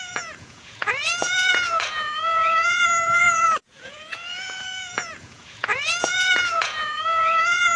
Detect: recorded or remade remade